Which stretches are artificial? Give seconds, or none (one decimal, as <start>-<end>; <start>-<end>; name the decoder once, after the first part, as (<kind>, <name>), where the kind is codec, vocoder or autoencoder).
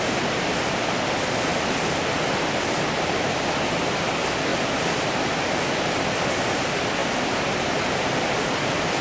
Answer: none